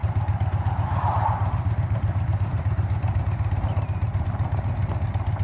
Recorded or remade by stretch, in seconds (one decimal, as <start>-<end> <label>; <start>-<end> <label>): 0.0-3.2 remade; 3.2-5.4 recorded